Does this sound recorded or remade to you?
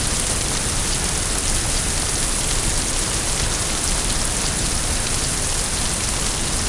recorded